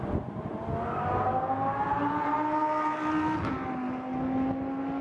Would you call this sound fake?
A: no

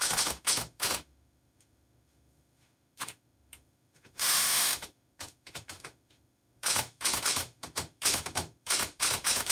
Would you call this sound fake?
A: yes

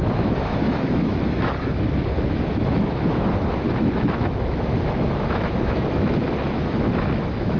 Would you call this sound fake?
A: yes